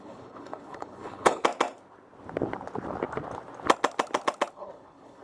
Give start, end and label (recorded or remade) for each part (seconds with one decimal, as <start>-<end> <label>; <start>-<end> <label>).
0.0-1.4 remade; 1.4-4.5 recorded; 4.5-5.2 remade